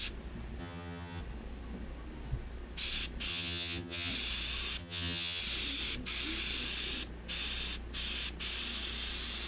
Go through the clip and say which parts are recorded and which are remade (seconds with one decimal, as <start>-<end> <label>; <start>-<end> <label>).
0.0-0.6 recorded; 0.6-1.2 remade; 1.2-3.3 recorded; 3.3-4.1 remade; 4.1-4.8 recorded; 4.8-5.4 remade; 5.4-9.5 recorded